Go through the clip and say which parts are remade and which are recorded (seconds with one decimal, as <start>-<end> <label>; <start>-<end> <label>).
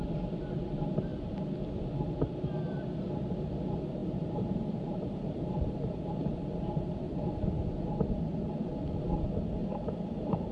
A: 0.0-4.0 recorded; 4.0-6.1 remade; 6.1-9.6 recorded; 9.6-10.5 remade